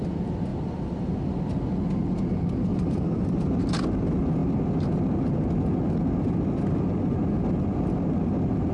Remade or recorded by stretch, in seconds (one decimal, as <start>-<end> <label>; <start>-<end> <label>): 0.0-0.5 recorded; 0.5-1.1 remade; 1.1-2.7 recorded; 2.7-3.6 remade; 3.6-8.7 recorded